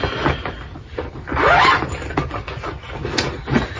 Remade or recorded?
recorded